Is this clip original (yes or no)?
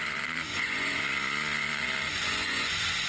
no